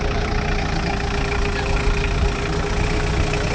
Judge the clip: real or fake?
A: real